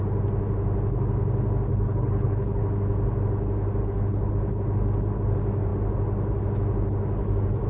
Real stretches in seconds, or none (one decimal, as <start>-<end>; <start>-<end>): 0.0-1.7; 2.6-3.8; 4.3-7.7